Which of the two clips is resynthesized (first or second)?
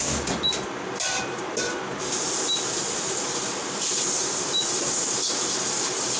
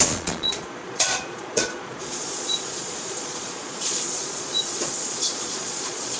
second